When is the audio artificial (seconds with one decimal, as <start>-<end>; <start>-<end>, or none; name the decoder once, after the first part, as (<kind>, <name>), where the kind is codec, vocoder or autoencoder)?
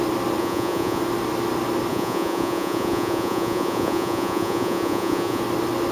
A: 0.4-1.0 (vocoder, Vocos); 1.9-5.4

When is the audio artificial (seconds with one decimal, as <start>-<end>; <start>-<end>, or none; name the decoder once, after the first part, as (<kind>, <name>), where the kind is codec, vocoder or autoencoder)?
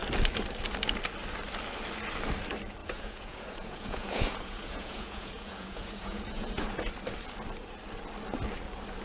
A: 2.8-6.6 (vocoder, Vocos)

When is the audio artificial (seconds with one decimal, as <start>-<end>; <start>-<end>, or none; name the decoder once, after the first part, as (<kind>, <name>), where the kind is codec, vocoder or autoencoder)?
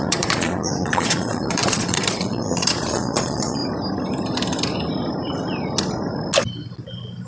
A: 0.0-3.6 (vocoder, Vocos)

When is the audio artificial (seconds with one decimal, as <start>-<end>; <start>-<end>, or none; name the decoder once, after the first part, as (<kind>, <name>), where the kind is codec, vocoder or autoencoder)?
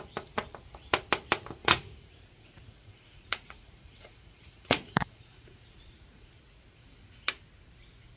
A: 1.6-6.3 (vocoder, Vocos)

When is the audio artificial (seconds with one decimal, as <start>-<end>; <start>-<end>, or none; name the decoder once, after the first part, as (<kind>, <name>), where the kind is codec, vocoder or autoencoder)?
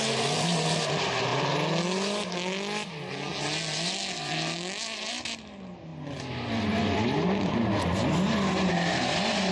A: none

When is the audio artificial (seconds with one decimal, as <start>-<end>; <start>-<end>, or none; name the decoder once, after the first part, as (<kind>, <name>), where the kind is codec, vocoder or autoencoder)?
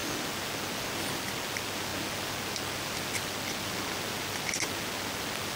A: none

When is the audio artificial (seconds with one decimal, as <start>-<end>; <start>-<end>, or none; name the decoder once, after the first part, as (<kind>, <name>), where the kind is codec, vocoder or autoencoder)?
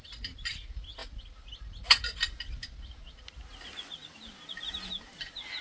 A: none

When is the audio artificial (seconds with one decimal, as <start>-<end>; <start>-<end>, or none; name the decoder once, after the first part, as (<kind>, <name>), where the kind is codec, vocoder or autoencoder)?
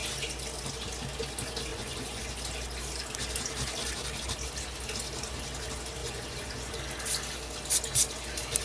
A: 1.7-2.2 (vocoder, Vocos); 6.0-6.7